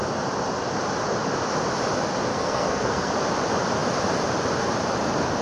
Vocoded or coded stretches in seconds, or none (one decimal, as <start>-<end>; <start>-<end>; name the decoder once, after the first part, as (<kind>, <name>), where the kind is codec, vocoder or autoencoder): 2.3-3.1 (codec, SNAC)